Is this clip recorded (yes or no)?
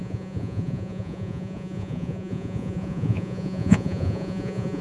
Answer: no